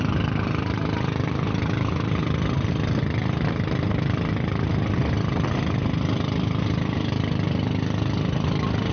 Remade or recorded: recorded